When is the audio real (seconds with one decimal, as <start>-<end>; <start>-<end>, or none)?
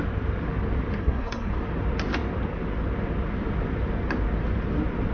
0.0-1.0; 1.5-5.1